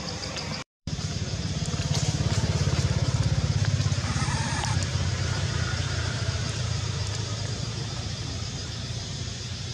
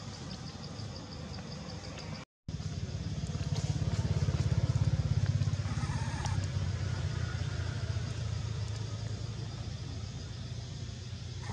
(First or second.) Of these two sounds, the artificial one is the first